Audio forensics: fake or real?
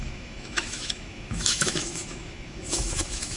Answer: fake